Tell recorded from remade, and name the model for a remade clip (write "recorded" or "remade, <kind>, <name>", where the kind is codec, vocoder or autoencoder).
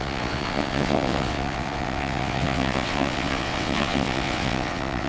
remade, vocoder, WaveNeXt